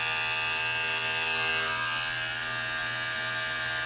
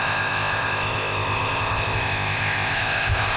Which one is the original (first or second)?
first